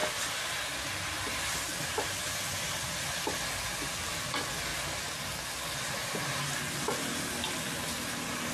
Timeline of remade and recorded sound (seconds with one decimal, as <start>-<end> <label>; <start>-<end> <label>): 0.0-8.5 recorded